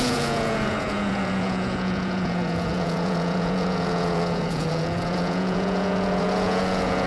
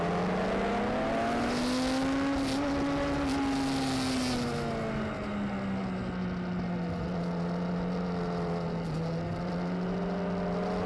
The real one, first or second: second